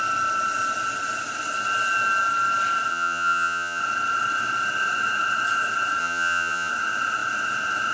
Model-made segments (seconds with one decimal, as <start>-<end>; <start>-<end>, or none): 2.9-3.8; 6.0-6.7

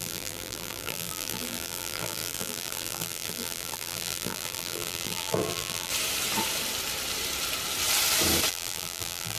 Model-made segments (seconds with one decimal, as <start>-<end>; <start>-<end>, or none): 0.0-5.9; 8.5-9.4

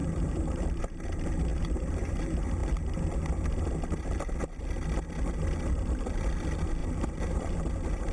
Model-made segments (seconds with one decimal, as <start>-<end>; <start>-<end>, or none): 0.0-0.8; 1.5-2.2; 6.8-7.6

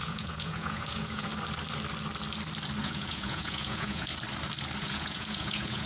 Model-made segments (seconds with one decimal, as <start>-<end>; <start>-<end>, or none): 0.0-1.3; 2.8-4.1; 4.8-5.9

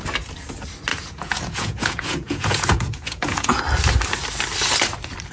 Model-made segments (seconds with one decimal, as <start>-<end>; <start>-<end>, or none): 0.9-3.6

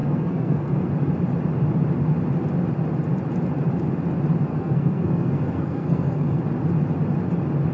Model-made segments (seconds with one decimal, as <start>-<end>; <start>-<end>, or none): 0.0-0.9; 4.5-6.4

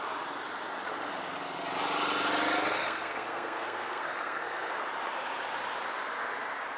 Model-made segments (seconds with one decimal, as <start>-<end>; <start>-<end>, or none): 2.8-4.7